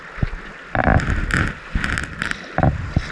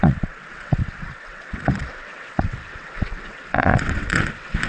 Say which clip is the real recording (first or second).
first